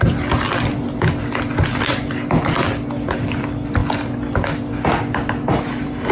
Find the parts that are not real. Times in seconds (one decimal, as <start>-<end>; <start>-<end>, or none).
none